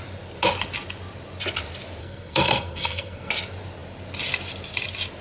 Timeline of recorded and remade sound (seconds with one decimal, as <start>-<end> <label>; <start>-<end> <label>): 0.0-2.0 recorded; 2.0-3.3 remade; 3.3-5.2 recorded

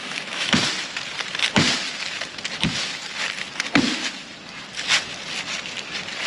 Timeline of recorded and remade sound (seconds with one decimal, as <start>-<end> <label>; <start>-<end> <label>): 0.0-0.6 remade; 0.6-6.3 recorded

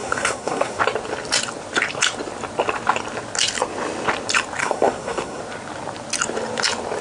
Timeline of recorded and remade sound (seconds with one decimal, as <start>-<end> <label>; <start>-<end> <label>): 0.0-0.8 remade; 0.8-4.6 recorded; 4.6-5.4 remade; 5.4-7.0 recorded

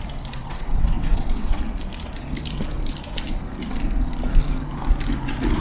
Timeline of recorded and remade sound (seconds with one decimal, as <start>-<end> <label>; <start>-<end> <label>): 0.0-0.4 recorded; 0.4-1.6 remade; 1.6-5.6 recorded